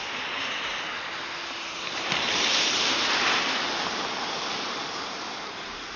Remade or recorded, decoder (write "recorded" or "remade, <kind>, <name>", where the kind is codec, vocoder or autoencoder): remade, vocoder, BigVGAN v2